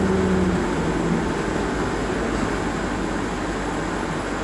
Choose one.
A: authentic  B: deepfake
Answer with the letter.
A